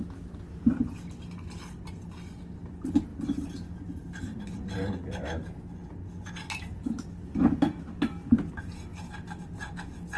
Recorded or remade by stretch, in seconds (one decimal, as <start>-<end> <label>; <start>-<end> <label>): 0.0-3.1 recorded; 3.1-4.9 remade; 4.9-10.2 recorded